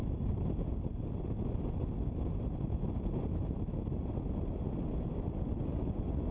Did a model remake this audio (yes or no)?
no